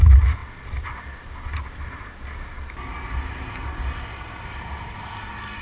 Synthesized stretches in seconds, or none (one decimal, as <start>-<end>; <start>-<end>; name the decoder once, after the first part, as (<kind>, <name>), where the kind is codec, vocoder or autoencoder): 0.4-1.0 (vocoder, BigVGAN v2)